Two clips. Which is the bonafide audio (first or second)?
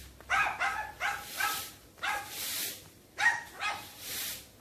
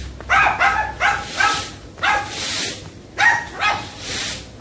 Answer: second